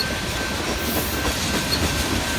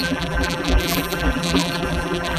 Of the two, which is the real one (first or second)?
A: first